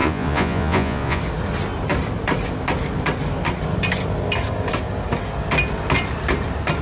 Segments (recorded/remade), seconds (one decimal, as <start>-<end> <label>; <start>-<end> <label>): 0.0-1.2 remade; 1.2-6.8 recorded